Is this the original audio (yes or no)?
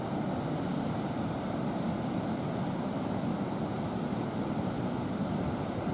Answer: yes